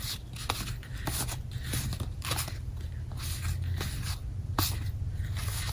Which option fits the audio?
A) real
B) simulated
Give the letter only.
A